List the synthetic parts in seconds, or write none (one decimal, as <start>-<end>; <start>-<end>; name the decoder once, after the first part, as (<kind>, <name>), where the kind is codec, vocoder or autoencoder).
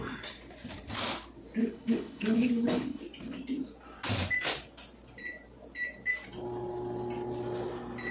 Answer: 1.6-3.0 (codec, HILCodec)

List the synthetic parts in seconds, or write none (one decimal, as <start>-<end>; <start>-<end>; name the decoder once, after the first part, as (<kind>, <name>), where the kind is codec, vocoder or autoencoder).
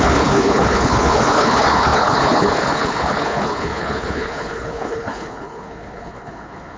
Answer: 0.0-6.8 (codec, HILCodec)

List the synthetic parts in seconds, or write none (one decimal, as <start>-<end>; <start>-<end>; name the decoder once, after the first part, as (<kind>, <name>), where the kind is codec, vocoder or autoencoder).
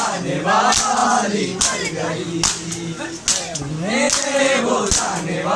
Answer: none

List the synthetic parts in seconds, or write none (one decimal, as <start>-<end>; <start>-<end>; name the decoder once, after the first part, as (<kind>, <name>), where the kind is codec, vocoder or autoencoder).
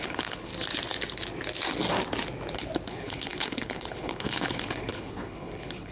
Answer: 0.0-0.5 (codec, HILCodec); 2.9-5.9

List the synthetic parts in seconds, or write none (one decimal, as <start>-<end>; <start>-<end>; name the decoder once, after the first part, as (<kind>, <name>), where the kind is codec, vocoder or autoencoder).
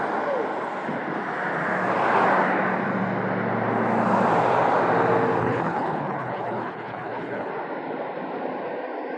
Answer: 5.4-7.5 (codec, HILCodec)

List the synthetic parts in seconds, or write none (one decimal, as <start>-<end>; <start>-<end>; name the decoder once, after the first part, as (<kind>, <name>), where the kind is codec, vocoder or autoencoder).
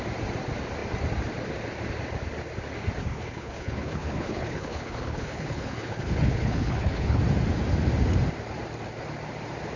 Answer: 3.0-7.2 (codec, HILCodec)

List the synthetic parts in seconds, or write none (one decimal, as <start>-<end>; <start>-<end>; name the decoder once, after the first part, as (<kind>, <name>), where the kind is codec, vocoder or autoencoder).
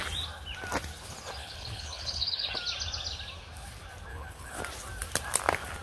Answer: 1.4-2.5 (codec, HILCodec); 4.1-4.6